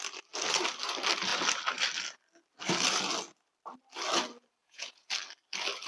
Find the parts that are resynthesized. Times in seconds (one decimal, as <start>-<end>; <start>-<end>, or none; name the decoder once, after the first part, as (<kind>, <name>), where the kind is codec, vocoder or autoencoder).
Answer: 4.6-5.1 (vocoder, Vocos)